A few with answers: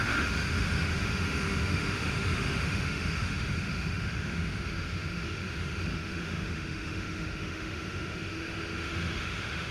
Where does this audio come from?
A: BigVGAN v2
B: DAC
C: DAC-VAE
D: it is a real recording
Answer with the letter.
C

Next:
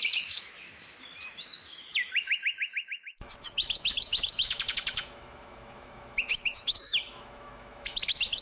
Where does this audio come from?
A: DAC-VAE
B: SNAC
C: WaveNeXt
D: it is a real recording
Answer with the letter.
A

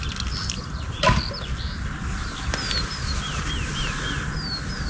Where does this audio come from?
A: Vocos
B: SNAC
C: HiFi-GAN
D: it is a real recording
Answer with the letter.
D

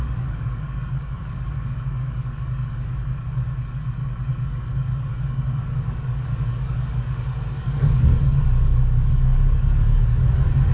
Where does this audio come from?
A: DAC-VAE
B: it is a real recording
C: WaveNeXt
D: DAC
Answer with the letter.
D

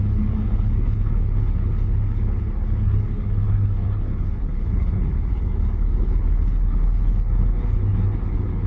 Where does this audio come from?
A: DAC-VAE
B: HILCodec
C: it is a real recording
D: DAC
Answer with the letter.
B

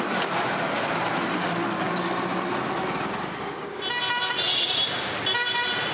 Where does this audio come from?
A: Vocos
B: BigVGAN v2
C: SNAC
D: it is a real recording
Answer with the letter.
D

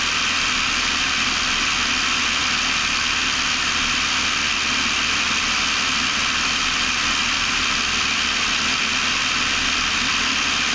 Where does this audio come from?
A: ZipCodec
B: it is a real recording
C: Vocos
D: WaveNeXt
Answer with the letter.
B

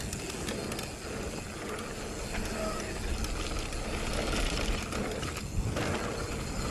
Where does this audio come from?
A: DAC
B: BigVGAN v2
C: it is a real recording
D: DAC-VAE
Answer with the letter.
C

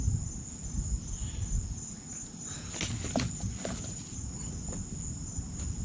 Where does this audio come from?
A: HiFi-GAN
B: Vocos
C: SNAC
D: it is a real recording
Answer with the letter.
D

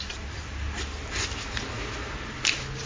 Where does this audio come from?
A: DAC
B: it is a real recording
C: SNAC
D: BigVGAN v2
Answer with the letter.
B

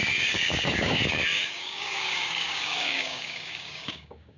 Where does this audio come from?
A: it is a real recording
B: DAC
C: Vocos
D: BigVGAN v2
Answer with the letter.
B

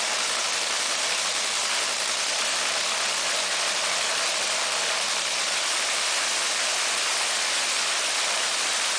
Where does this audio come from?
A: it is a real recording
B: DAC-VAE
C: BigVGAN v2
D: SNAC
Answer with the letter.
A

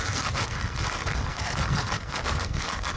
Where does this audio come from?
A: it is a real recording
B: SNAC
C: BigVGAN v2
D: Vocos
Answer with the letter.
B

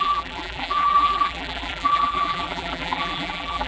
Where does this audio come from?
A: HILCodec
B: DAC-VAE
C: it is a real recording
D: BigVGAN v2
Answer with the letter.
D